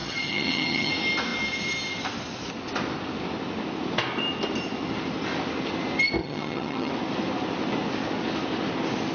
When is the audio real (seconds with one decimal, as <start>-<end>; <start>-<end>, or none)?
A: 0.9-6.2; 6.9-9.1